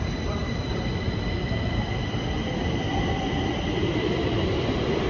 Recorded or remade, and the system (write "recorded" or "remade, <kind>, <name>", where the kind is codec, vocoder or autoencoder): remade, vocoder, BigVGAN v2